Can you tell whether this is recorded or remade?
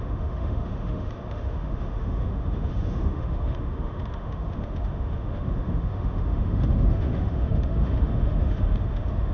remade